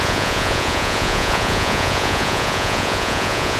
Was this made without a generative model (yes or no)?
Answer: no